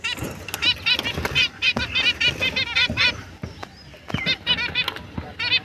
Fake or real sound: real